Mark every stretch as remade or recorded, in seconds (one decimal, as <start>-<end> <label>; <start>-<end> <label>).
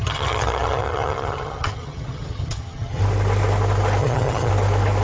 0.0-3.0 remade; 3.0-4.0 recorded; 4.0-4.5 remade; 4.5-5.0 recorded